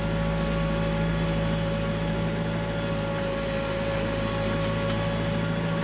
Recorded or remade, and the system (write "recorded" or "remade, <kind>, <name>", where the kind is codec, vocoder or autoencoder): recorded